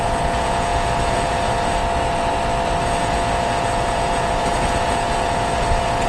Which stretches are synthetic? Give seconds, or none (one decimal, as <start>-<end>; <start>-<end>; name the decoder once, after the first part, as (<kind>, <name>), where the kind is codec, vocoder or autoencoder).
0.0-1.8 (vocoder, Vocos); 2.8-6.1